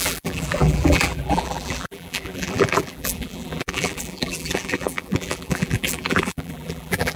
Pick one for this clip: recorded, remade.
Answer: remade